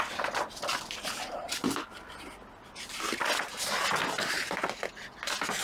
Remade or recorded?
recorded